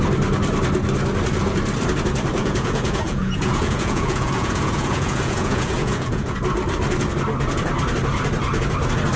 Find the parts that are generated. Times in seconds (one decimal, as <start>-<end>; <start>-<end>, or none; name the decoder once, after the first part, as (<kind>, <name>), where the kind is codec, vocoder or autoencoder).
2.4-6.4 (vocoder, Vocos)